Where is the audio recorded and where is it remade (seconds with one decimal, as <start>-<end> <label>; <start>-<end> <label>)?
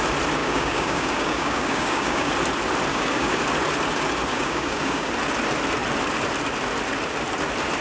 0.0-0.4 recorded; 0.4-2.3 remade; 2.3-2.9 recorded; 2.9-3.4 remade; 3.4-4.3 recorded; 4.3-5.1 remade; 5.1-7.8 recorded